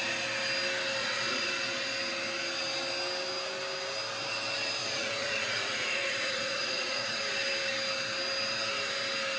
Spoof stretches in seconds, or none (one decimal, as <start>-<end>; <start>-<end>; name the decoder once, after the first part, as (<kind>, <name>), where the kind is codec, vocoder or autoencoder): 1.0-1.5 (vocoder, Vocos); 4.8-7.2